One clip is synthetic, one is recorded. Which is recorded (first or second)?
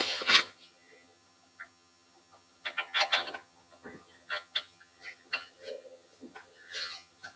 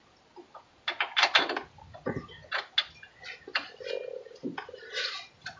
second